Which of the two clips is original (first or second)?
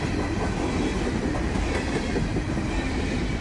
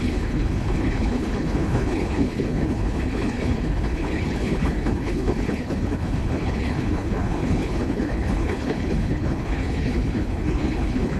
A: first